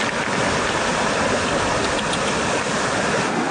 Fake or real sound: real